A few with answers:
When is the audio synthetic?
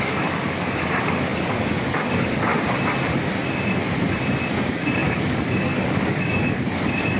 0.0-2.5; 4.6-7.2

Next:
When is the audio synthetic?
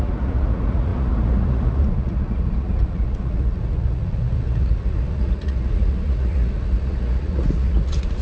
0.0-8.2